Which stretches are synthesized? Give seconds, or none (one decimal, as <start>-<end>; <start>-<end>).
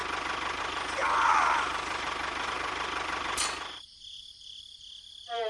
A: 0.6-5.5